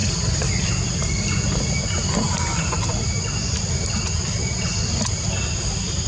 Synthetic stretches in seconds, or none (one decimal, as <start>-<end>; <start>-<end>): none